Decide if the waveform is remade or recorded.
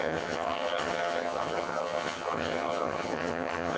remade